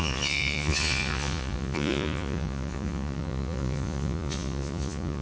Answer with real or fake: fake